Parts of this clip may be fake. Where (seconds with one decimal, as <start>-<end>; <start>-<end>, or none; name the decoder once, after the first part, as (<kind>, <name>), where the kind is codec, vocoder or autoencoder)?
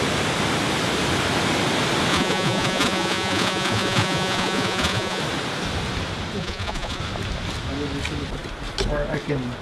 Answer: 2.1-5.2 (vocoder, Vocos); 6.4-7.0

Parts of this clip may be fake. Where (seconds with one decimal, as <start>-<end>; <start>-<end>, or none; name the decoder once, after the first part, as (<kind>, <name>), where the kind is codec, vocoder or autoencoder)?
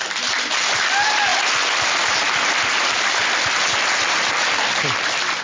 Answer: none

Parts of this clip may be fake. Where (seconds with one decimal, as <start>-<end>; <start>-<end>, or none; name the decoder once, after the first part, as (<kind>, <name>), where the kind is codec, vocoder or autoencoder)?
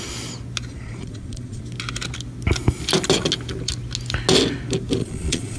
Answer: 0.7-1.6 (vocoder, Vocos); 5.0-5.6